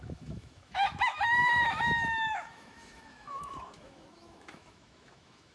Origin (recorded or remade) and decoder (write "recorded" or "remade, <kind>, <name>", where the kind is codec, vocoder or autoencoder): remade, autoencoder, DAC-VAE